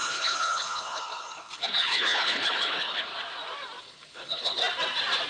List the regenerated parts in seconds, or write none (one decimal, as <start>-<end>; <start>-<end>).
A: 0.0-3.1; 3.8-4.6